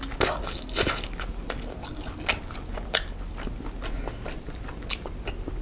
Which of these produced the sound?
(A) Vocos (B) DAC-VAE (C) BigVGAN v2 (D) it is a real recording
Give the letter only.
D